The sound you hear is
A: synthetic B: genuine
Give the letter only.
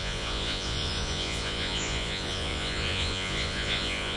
A